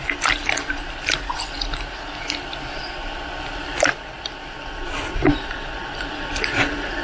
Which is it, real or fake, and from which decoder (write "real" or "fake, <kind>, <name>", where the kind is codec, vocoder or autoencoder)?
real